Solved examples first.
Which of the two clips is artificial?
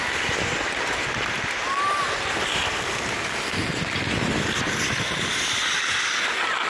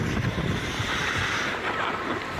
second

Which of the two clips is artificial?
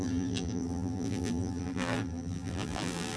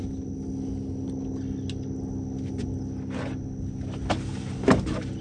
first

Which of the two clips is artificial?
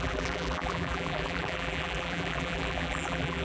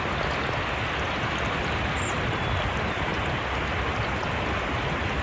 first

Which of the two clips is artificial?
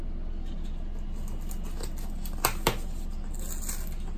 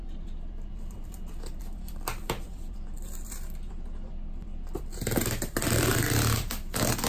second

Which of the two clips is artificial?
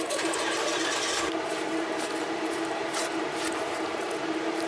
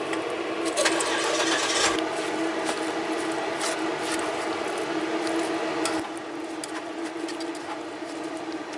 first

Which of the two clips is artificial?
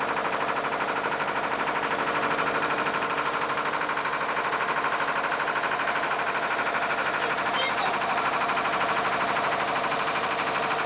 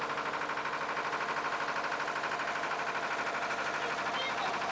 first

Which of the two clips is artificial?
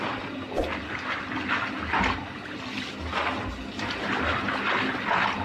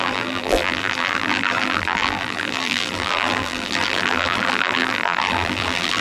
second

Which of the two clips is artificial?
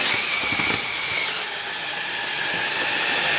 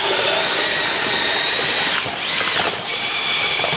second